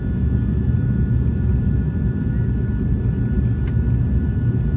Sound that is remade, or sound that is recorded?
recorded